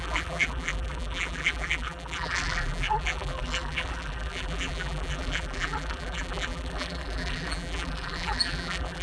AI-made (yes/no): yes